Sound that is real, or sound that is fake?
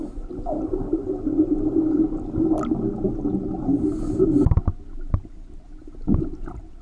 real